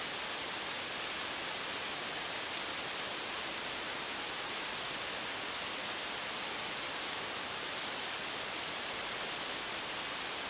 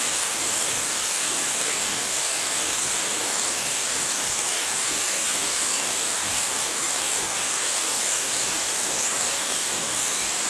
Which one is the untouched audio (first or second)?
first